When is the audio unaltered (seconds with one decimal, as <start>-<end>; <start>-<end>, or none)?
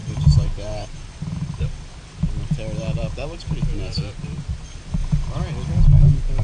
1.1-2.8; 3.4-6.4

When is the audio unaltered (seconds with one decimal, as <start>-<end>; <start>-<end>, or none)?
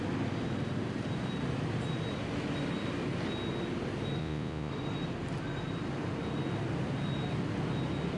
0.0-4.2; 4.7-8.2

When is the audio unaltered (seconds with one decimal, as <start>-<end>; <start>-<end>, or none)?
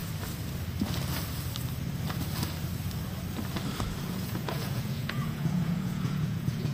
0.0-4.0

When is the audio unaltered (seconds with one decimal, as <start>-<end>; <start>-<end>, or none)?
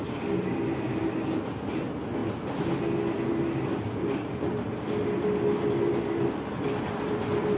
0.0-7.6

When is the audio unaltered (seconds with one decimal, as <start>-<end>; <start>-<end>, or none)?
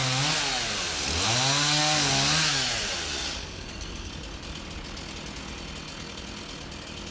0.0-3.4; 4.1-7.1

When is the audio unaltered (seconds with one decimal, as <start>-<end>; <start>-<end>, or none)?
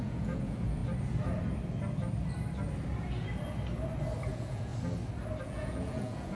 0.8-4.3; 4.7-5.4